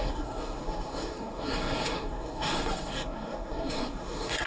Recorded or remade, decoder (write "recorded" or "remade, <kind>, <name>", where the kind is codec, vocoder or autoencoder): remade, codec, SNAC